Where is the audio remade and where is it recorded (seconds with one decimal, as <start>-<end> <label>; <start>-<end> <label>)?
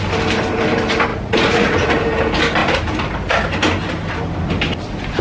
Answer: 0.0-1.1 recorded; 1.1-2.0 remade; 2.0-5.2 recorded